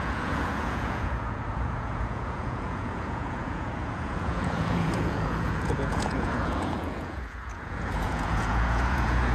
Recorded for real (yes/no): no